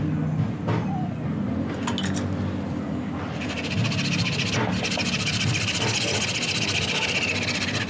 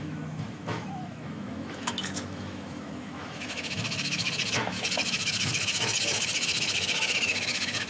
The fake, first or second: second